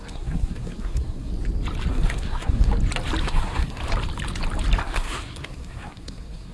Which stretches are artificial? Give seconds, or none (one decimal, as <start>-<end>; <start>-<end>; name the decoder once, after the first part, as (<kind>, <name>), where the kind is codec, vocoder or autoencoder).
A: 0.0-1.3 (codec, SNAC); 1.9-2.7; 3.2-3.8; 4.8-6.5